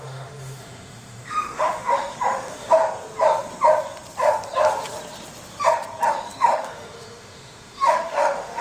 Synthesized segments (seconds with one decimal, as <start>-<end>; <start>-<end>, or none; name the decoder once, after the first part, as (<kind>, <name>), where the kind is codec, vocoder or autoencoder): 0.0-2.8 (autoencoder, DAC-VAE); 6.1-8.6